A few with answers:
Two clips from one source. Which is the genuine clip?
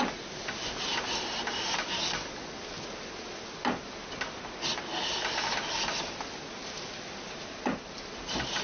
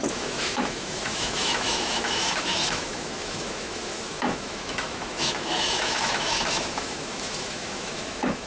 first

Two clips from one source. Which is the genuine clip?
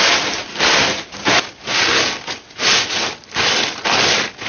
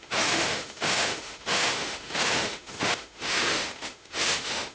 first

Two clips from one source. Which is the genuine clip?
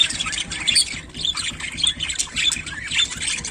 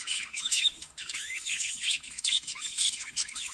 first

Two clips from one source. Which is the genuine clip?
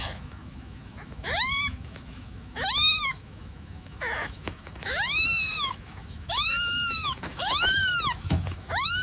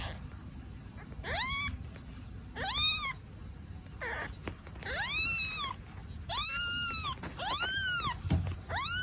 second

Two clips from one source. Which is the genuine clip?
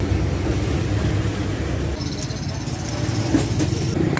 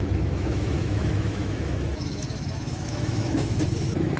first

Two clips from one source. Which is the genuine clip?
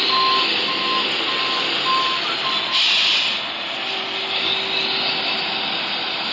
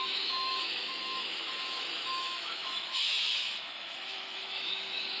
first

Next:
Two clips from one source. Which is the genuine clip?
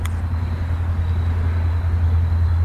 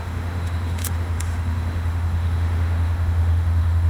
first